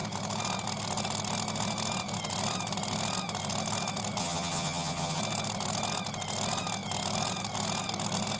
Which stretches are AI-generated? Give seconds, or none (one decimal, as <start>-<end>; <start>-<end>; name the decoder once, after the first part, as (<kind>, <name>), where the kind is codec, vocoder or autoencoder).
4.2-5.2 (vocoder, HiFi-GAN)